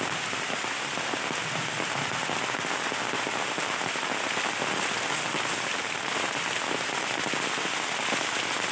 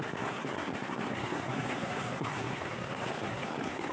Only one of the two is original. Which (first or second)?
first